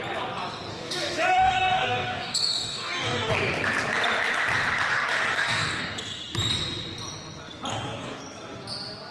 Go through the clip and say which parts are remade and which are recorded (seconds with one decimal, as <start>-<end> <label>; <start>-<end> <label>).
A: 0.0-0.7 recorded; 0.7-3.3 remade; 3.3-4.9 recorded; 4.9-5.8 remade; 5.8-7.7 recorded; 7.7-8.2 remade; 8.2-9.1 recorded